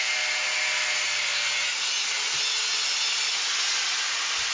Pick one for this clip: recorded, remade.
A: recorded